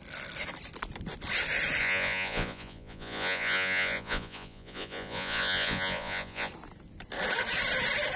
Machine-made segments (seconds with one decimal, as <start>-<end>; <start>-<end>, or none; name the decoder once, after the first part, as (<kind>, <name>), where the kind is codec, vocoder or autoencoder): 1.8-6.5 (vocoder, Vocos)